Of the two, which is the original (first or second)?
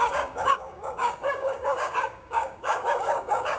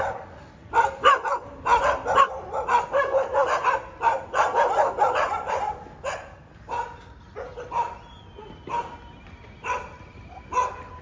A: second